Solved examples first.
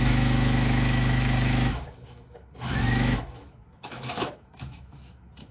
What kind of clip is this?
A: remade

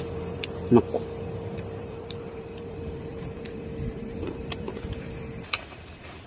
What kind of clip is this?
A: remade